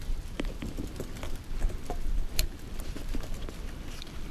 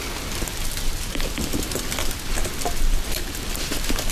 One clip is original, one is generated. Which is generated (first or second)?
first